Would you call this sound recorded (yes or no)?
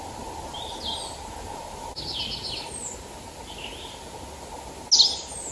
yes